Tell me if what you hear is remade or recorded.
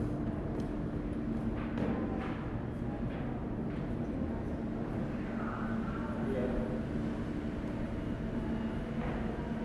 recorded